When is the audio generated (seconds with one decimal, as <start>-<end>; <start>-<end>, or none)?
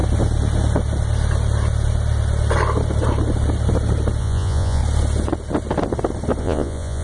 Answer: 4.2-4.8; 6.4-7.0